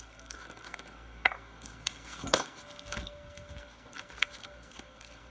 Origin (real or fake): fake